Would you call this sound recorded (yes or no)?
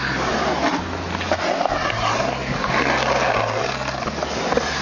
yes